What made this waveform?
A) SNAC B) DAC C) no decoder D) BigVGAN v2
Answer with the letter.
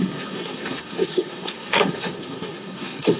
A